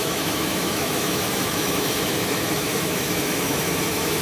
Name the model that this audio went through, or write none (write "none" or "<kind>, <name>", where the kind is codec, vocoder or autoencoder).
autoencoder, DAC-VAE